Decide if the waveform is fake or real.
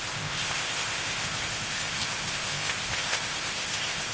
fake